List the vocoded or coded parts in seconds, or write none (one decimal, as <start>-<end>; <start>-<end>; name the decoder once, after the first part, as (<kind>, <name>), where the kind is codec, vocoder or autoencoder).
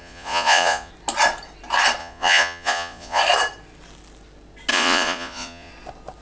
0.0-0.9 (vocoder, Vocos); 2.0-3.2; 4.7-5.7